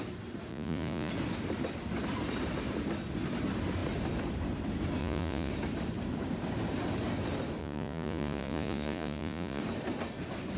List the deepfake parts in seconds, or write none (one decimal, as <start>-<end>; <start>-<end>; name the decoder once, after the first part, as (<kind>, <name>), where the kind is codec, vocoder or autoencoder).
0.5-1.1 (vocoder, Vocos); 5.0-5.5; 7.6-9.6